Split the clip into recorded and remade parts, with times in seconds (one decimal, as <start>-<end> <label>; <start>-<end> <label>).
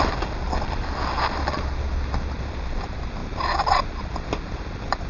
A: 0.0-5.1 recorded